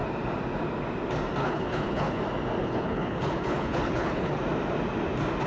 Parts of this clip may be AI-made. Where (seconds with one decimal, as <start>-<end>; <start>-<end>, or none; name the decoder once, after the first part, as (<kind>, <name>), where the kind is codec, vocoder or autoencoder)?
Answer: 1.4-2.2 (codec, HILCodec); 2.6-4.4